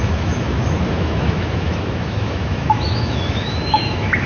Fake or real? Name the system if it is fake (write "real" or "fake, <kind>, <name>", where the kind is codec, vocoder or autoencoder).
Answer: fake, autoencoder, DAC-VAE